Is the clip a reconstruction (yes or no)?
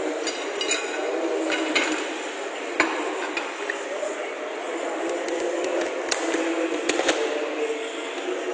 no